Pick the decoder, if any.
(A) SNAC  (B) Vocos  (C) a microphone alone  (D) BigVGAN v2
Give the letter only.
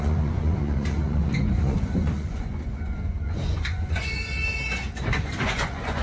B